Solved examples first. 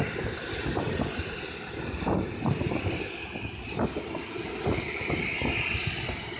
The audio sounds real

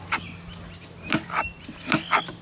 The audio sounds real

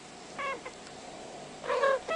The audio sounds real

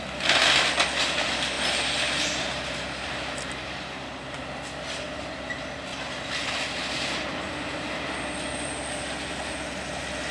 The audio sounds real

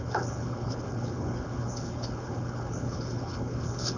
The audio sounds fake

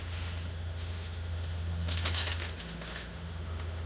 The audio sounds fake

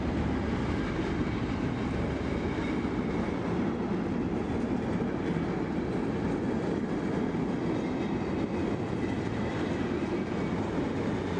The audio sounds real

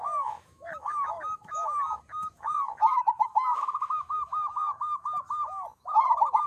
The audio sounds fake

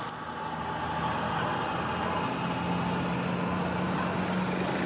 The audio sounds real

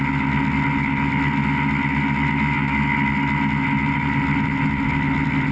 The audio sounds real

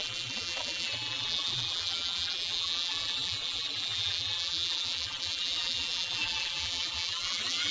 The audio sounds fake